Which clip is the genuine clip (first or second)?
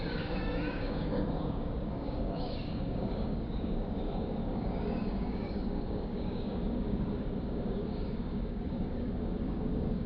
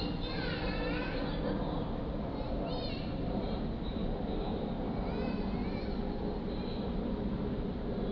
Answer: second